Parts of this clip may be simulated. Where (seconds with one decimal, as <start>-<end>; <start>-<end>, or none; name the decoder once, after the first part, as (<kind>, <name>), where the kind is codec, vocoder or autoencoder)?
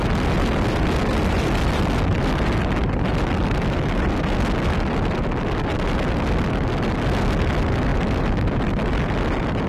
none